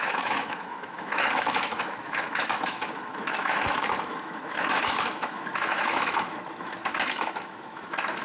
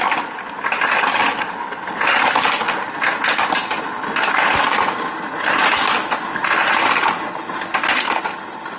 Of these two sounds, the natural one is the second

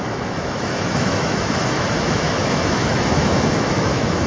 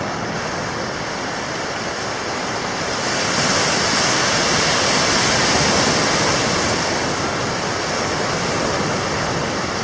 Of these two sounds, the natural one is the second